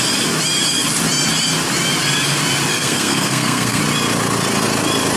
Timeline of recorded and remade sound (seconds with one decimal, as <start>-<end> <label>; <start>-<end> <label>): 0.0-2.7 recorded; 2.7-3.8 remade; 3.8-5.2 recorded